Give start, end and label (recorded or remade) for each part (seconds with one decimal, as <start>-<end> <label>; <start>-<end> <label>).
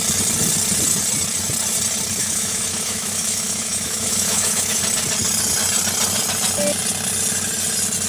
0.0-2.2 recorded; 2.2-4.8 remade; 4.8-8.1 recorded